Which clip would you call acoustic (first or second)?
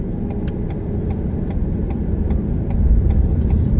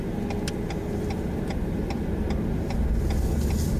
second